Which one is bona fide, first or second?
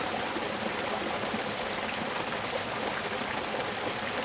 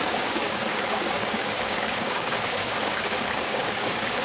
first